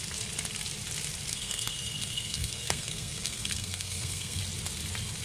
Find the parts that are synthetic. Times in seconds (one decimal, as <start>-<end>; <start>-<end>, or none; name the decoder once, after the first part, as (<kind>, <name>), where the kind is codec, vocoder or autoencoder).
1.3-4.4 (codec, SNAC)